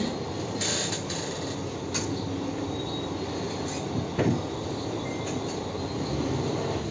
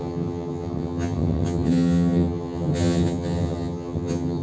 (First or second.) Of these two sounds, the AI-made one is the second